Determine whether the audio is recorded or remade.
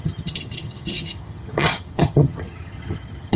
remade